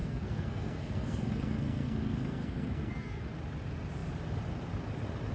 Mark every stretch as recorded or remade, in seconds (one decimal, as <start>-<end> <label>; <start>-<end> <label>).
0.0-3.2 remade; 3.2-5.3 recorded